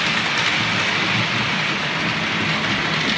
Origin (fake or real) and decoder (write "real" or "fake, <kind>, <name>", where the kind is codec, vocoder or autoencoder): real